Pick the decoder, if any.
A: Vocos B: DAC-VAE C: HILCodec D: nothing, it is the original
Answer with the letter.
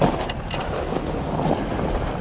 D